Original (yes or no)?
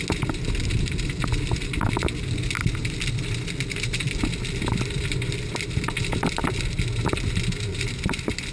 yes